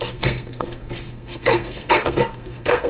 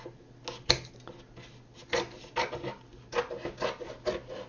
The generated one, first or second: first